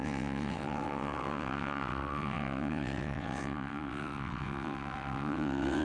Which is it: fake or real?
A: fake